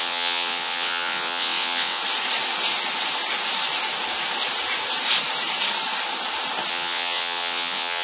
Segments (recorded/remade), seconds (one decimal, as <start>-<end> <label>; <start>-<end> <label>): 0.0-2.0 remade; 2.0-6.7 recorded; 6.7-8.0 remade